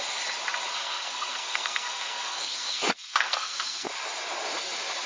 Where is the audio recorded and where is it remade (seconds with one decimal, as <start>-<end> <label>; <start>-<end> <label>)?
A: 0.0-0.8 recorded; 0.8-3.9 remade; 3.9-5.1 recorded